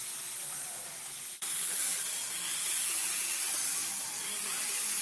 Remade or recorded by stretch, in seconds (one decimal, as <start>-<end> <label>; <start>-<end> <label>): 0.0-5.0 recorded